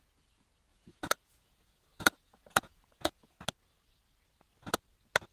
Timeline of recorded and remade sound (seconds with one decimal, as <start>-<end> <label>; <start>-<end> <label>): 0.0-0.7 recorded; 0.7-3.4 remade; 3.4-5.3 recorded